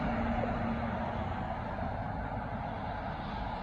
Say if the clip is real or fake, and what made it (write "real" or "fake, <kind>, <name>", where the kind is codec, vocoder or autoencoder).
real